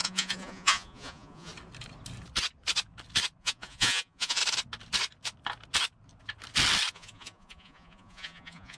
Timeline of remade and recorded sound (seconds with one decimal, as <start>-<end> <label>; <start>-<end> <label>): 0.0-1.5 remade; 1.5-3.4 recorded; 3.4-4.4 remade; 4.4-6.9 recorded; 6.9-8.8 remade